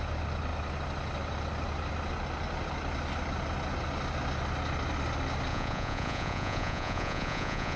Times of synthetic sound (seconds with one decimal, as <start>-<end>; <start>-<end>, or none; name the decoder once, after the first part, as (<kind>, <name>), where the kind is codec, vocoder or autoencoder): 5.5-7.8 (vocoder, Vocos)